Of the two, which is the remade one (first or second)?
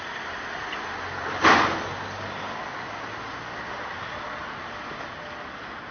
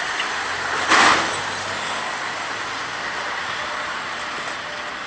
second